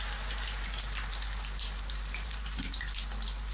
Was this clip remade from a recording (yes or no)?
yes